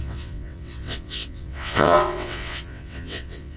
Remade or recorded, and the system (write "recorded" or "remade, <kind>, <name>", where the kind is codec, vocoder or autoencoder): remade, vocoder, WaveNeXt